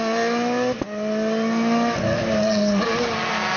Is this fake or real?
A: real